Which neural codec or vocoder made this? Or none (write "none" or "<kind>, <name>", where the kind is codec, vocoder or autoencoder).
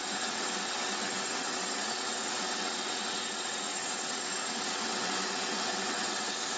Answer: vocoder, WaveNeXt